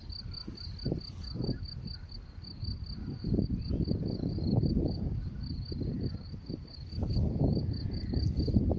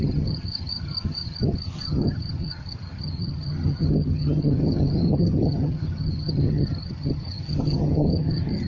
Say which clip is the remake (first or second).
second